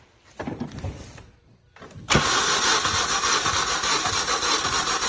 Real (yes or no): no